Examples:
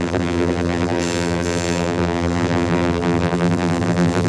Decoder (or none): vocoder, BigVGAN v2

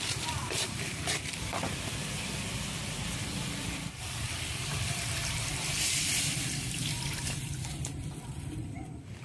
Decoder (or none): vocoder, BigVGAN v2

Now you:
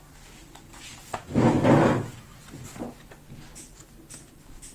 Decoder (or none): none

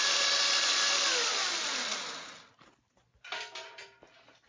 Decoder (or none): none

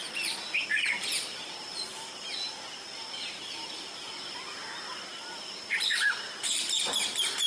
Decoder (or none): vocoder, BigVGAN v2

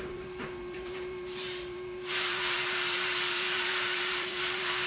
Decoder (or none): vocoder, BigVGAN v2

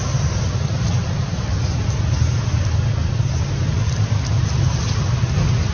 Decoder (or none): none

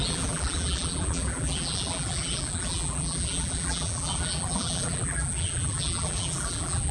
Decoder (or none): vocoder, BigVGAN v2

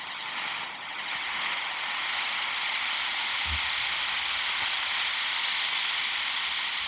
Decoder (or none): none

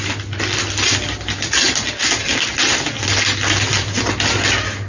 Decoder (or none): none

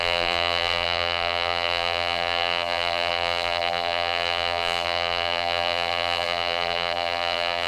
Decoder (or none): vocoder, BigVGAN v2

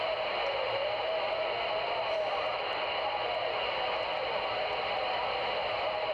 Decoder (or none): none